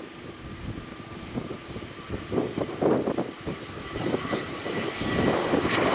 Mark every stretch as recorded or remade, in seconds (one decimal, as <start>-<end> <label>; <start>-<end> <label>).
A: 0.0-1.6 remade; 1.6-4.1 recorded; 4.1-5.9 remade